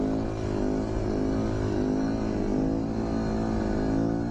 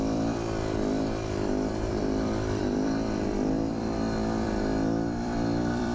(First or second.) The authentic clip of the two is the first